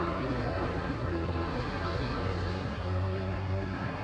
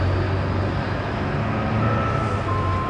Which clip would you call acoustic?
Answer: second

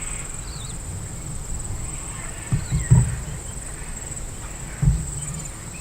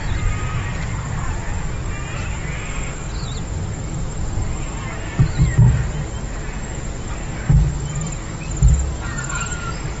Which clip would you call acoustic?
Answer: second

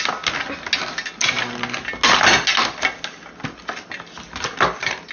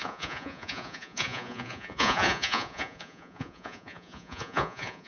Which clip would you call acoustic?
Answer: first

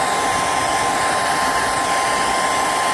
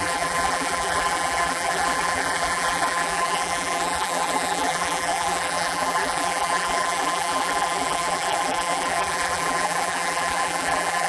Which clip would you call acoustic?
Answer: first